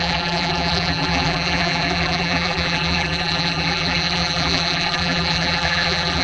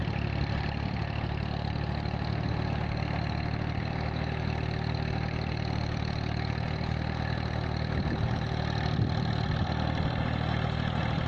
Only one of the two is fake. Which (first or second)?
first